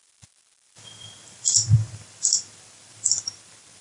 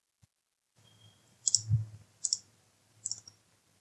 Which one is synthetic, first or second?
first